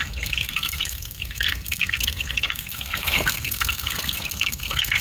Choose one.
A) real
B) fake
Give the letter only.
B